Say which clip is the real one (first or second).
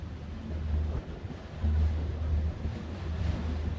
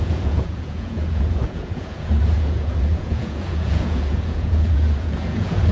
first